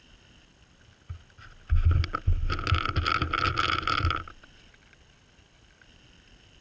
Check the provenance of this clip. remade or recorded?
recorded